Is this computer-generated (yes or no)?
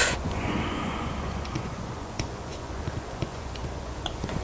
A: yes